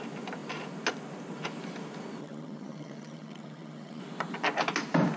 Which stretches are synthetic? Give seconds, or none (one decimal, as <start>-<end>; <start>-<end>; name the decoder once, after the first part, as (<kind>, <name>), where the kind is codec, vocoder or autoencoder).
2.2-4.0 (vocoder, HiFi-GAN)